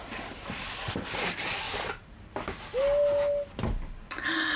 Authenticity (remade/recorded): recorded